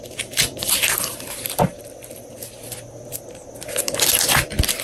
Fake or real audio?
real